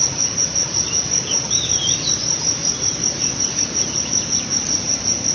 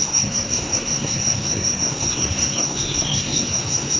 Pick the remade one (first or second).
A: second